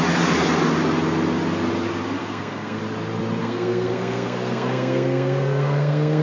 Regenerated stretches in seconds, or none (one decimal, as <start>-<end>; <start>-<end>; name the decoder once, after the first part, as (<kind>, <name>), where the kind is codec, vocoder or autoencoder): 2.2-2.8 (codec, SNAC); 3.4-6.2